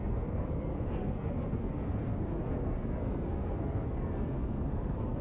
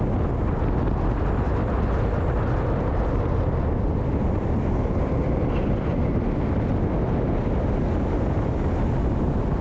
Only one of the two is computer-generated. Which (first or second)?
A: first